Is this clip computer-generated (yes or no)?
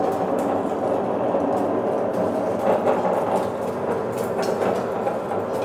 no